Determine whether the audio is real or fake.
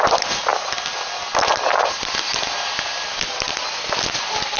real